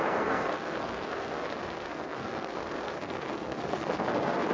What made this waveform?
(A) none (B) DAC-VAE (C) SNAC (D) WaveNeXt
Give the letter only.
C